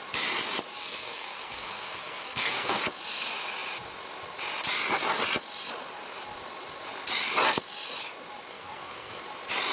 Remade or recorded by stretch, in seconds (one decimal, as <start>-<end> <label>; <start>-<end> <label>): 0.0-0.8 recorded; 0.8-2.8 remade; 2.8-8.5 recorded; 8.5-9.2 remade; 9.2-9.7 recorded